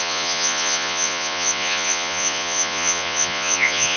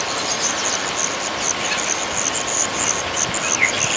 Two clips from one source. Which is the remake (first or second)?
first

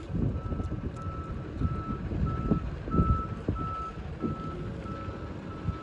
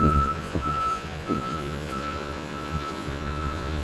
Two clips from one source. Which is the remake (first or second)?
second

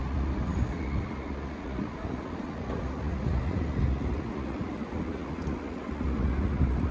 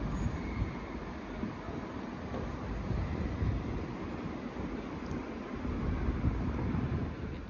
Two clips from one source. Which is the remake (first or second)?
first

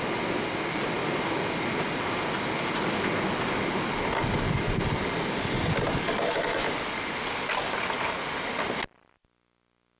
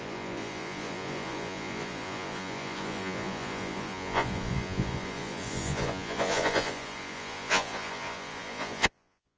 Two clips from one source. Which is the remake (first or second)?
second